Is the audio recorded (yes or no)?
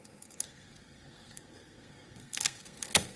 no